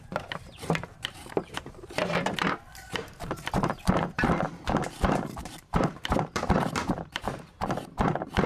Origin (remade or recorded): remade